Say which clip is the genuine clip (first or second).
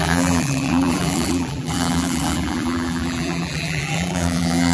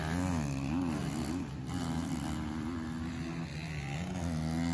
second